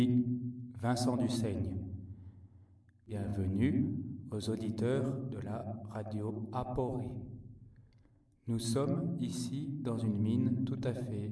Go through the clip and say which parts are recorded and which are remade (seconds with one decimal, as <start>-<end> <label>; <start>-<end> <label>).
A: 0.0-11.3 recorded